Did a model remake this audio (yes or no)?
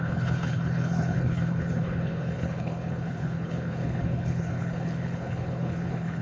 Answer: yes